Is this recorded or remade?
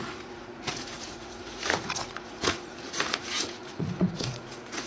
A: remade